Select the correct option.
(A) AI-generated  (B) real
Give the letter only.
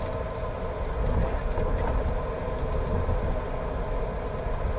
B